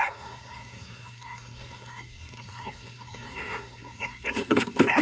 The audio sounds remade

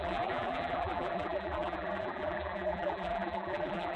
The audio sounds remade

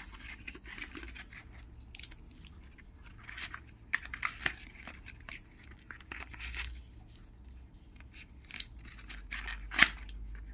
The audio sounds recorded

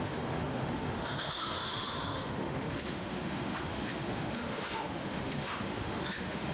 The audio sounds remade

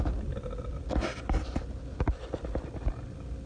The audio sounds recorded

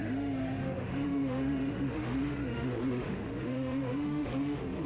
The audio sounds remade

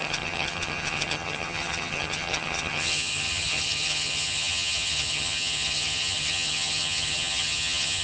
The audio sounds remade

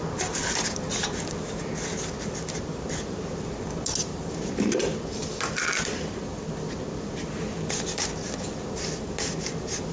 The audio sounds recorded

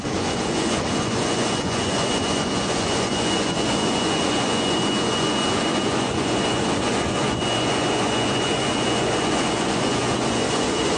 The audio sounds remade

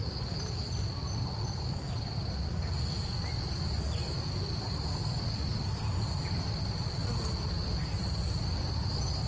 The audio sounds recorded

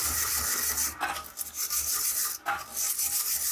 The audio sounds remade